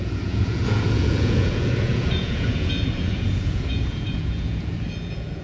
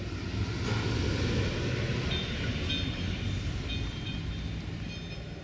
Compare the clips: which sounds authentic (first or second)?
second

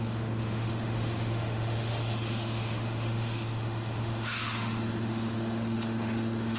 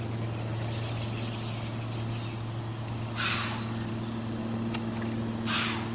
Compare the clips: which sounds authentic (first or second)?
second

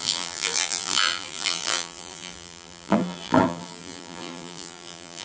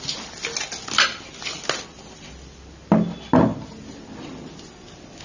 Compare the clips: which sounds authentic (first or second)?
second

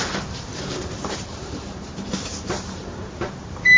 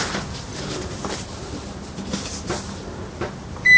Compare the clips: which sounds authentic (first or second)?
second